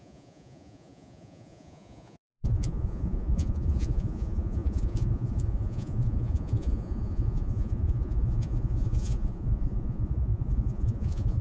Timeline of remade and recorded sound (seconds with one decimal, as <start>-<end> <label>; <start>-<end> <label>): 0.0-11.4 remade